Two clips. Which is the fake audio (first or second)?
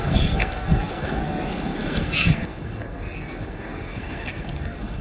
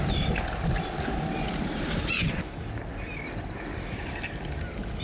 first